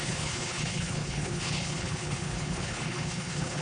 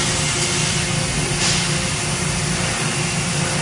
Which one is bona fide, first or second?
second